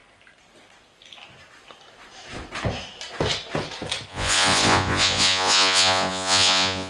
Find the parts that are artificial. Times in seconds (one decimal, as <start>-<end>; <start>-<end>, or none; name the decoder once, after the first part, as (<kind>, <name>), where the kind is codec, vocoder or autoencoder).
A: 4.1-6.9 (vocoder, Vocos)